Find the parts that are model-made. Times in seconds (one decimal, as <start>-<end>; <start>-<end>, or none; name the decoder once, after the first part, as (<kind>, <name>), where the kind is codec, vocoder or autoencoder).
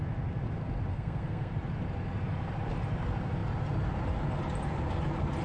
0.9-1.5 (codec, SNAC)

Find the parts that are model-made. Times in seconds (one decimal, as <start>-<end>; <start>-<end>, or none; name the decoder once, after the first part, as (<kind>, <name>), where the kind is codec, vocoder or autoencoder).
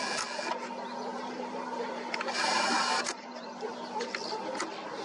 1.1-4.1 (vocoder, BigVGAN v2)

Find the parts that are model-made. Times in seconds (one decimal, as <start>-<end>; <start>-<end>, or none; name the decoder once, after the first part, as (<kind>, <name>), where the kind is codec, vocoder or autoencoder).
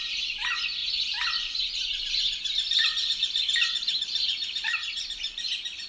0.0-5.9 (vocoder, BigVGAN v2)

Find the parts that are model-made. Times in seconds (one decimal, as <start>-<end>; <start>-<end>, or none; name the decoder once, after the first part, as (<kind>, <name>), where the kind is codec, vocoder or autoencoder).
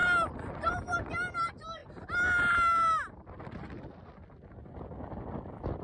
0.0-1.1 (vocoder, BigVGAN v2)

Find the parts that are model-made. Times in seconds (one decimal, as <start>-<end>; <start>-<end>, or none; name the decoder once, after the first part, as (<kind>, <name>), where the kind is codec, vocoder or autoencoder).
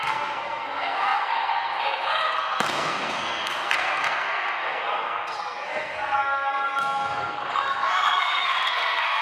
0.0-9.2 (codec, SNAC)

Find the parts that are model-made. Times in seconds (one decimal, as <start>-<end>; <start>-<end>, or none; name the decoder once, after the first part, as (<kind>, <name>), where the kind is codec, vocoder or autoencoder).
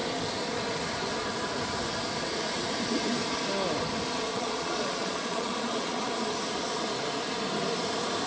4.3-6.1 (vocoder, Vocos)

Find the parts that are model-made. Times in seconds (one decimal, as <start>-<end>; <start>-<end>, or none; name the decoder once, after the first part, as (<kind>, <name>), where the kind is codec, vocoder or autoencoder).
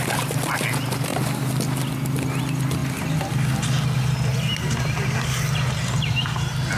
none